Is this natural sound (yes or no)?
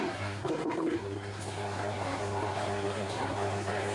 no